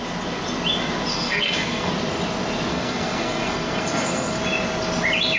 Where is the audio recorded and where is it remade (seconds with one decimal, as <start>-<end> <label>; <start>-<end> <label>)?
0.0-1.1 recorded; 1.1-1.9 remade; 1.9-2.7 recorded; 2.7-4.4 remade; 4.4-5.4 recorded